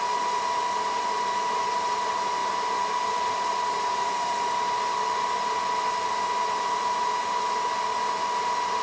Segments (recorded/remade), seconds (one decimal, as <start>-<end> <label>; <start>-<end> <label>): 0.0-8.8 recorded